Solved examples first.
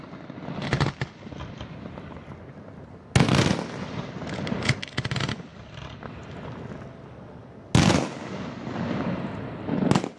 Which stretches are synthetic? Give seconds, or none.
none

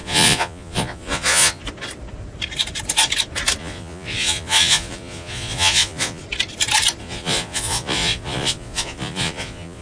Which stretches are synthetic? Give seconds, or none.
0.0-1.6 (vocoder, Vocos); 3.6-6.2; 7.0-9.8

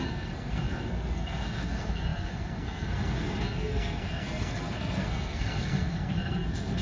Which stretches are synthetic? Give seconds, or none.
0.0-6.8 (codec, SNAC)

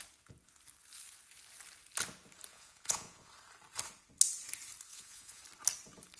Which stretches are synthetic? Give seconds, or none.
2.5-3.3 (vocoder, Vocos); 4.9-5.4

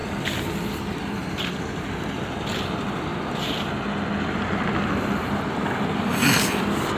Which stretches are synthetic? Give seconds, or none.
none

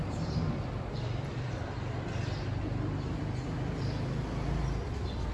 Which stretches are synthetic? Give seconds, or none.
0.0-3.2 (vocoder, BigVGAN v2)